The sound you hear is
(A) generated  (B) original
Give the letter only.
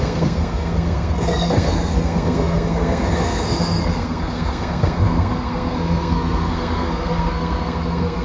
A